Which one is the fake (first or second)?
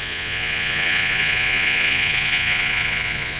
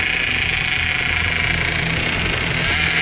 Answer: first